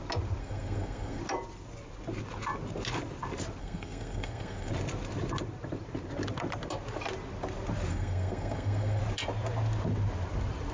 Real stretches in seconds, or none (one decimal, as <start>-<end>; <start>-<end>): 0.0-0.4; 1.2-3.6; 4.7-7.9; 9.0-10.7

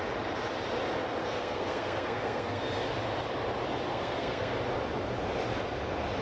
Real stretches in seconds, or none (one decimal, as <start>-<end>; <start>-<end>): 0.0-1.2; 2.6-3.9; 4.5-6.2

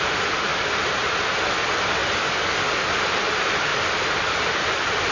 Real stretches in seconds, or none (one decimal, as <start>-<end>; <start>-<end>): 0.0-5.1

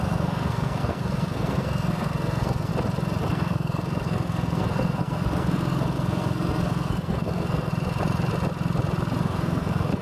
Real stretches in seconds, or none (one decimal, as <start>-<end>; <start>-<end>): 2.7-3.3; 7.7-9.2

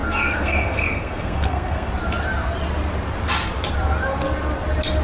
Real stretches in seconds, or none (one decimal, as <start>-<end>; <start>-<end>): 1.9-5.0

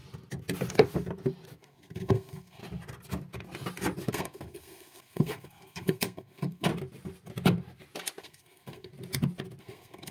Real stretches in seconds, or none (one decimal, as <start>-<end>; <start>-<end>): 0.0-1.6; 2.6-4.1; 6.7-8.2; 8.9-9.6

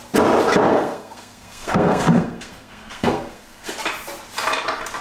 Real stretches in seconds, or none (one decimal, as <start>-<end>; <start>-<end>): 0.0-0.7; 3.7-5.0